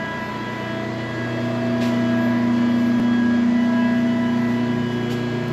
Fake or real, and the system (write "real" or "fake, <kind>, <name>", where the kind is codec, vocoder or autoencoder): real